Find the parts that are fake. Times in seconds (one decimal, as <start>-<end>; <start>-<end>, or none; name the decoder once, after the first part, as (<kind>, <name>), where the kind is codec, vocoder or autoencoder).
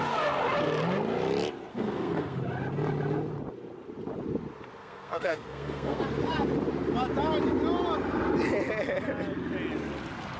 1.7-2.4 (codec, SNAC); 4.8-6.0